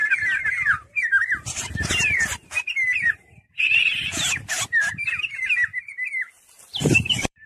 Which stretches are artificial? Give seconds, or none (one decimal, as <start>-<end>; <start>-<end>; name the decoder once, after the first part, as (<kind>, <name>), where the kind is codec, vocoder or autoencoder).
2.7-5.7 (vocoder, BigVGAN v2); 6.9-7.5